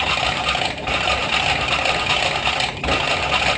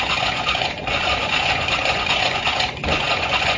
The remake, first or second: second